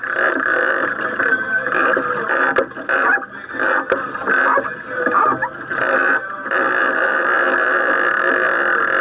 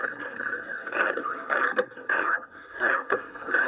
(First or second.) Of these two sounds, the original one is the first